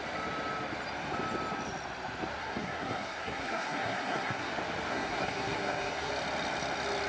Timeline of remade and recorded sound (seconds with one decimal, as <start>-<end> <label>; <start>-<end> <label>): 0.0-2.4 recorded; 2.4-4.5 remade; 4.5-4.9 recorded; 4.9-6.1 remade; 6.1-7.1 recorded